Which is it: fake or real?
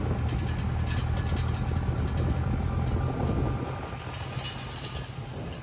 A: real